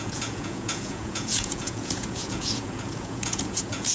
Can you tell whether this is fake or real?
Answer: fake